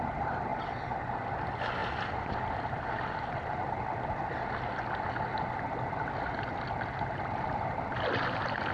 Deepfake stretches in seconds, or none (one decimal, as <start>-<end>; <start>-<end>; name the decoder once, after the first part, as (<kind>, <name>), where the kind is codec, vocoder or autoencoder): none